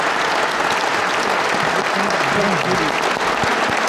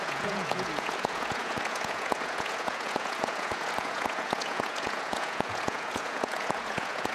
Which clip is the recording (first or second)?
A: first